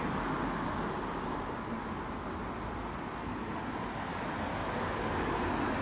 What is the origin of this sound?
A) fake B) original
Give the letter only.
B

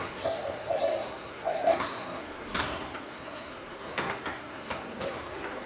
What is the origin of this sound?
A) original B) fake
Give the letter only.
B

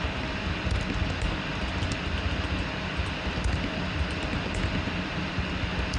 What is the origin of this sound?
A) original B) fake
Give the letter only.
A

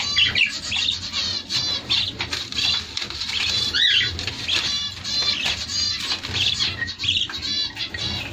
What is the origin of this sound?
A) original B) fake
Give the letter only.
A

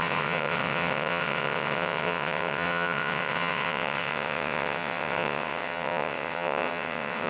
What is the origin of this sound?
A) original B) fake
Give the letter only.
B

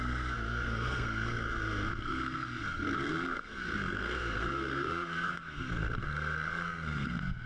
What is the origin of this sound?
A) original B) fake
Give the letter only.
B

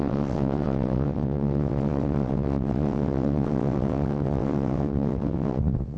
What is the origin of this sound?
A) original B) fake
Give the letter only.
B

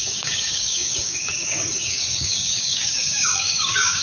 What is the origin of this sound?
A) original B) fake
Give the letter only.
B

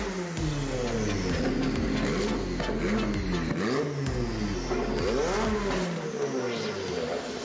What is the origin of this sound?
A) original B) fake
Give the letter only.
A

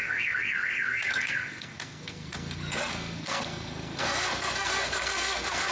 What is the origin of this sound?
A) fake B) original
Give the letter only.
A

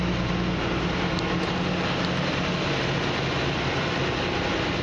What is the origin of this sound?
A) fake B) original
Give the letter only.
B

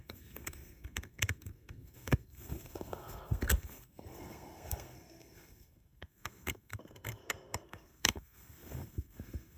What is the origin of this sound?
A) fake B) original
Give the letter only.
A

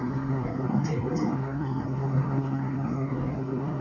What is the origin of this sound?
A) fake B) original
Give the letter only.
A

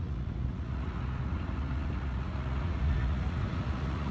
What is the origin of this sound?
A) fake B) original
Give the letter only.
A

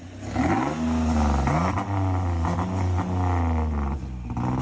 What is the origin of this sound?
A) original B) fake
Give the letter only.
A